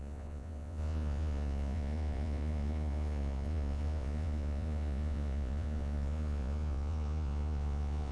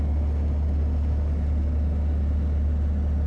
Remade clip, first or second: first